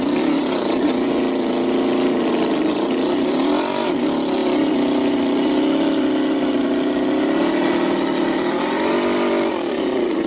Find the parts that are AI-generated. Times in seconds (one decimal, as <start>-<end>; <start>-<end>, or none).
0.0-10.3